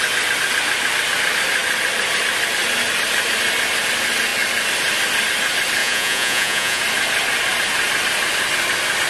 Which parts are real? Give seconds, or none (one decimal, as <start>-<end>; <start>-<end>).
0.0-5.8; 6.8-9.1